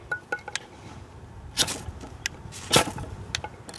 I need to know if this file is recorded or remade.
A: recorded